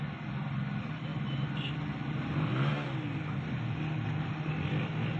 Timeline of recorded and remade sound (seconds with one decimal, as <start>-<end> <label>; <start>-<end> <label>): 0.0-5.2 recorded